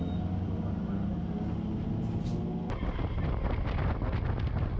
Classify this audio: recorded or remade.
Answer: recorded